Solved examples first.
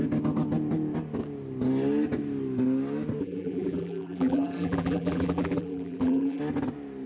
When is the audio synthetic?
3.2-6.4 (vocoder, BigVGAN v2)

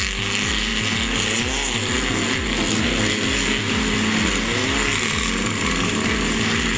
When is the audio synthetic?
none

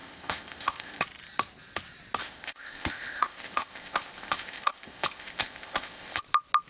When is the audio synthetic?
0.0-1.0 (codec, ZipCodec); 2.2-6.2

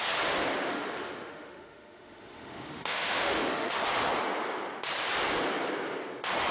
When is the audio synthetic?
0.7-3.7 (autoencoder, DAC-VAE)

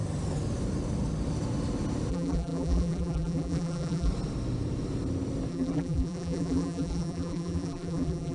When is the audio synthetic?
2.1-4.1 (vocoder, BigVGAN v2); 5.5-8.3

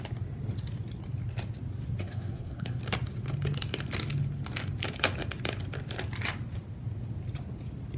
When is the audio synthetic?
2.0-2.8 (codec, SNAC)

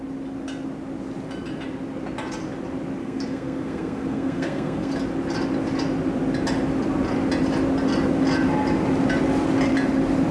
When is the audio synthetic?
3.0-4.9 (codec, SNAC)